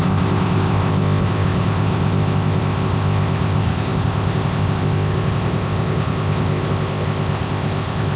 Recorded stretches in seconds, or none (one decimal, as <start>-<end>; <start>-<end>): none